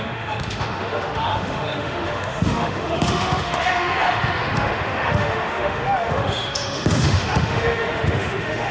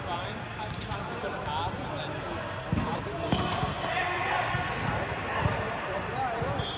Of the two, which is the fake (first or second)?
first